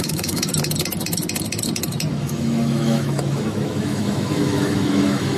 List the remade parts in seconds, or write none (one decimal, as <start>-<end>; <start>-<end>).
0.0-0.5; 2.1-5.4